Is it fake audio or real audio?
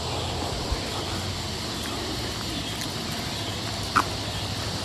real